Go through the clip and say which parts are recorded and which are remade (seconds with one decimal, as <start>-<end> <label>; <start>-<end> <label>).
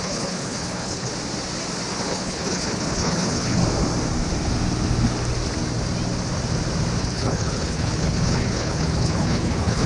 0.0-1.1 remade; 1.1-1.9 recorded; 1.9-3.6 remade; 3.6-7.0 recorded; 7.0-9.9 remade